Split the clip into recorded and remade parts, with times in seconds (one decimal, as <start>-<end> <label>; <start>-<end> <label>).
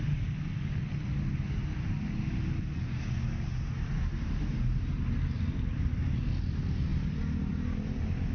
0.0-8.3 recorded